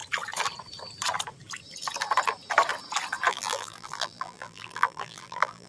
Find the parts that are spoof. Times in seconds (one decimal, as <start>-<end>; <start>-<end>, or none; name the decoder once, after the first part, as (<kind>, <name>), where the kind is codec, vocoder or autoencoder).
3.3-5.7 (vocoder, BigVGAN v2)